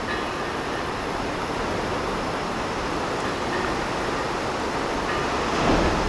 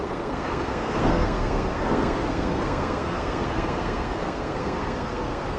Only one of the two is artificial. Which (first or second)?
second